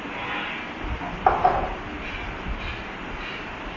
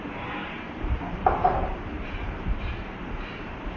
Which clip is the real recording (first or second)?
first